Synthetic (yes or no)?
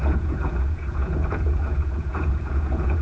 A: yes